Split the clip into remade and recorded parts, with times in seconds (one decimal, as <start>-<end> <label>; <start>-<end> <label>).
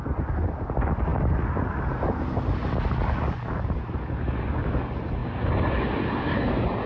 0.0-6.9 recorded